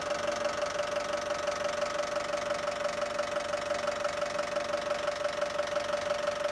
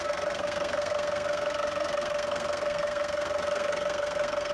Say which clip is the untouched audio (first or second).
first